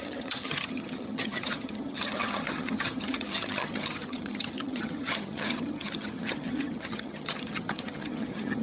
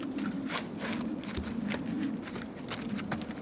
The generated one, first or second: first